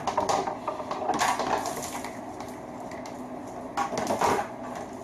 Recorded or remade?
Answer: recorded